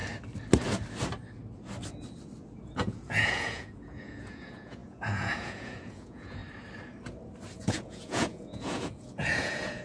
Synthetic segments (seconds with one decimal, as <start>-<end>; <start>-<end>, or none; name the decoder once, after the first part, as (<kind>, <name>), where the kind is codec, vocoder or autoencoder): 2.6-6.4 (vocoder, Vocos); 7.6-9.8